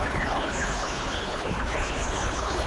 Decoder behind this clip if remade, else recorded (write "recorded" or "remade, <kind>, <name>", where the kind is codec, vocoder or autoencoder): remade, codec, HILCodec